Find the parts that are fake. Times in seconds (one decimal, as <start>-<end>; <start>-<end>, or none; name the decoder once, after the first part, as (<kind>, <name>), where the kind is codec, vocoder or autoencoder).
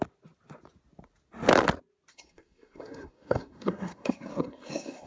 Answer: 2.1-5.1 (codec, SNAC)